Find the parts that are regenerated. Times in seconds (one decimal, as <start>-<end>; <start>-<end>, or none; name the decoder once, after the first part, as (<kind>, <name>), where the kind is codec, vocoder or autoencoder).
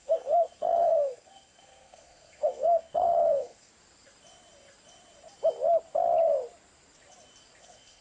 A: 0.0-3.7 (codec, SNAC); 7.6-8.0